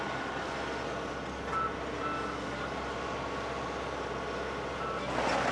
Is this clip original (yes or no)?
yes